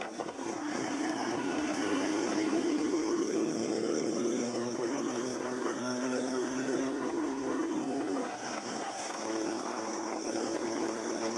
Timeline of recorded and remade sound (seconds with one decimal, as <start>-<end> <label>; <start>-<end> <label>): 0.0-11.4 remade